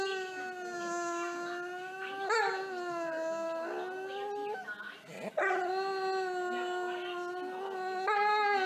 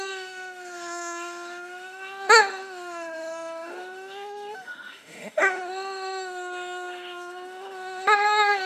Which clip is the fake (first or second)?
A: second